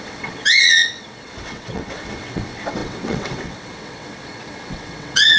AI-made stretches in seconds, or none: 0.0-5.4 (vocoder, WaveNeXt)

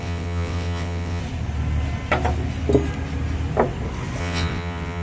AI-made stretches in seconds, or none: 0.0-1.2 (vocoder, WaveNeXt); 4.2-5.0